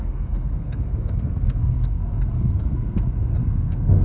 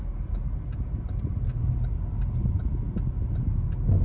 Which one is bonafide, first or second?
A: second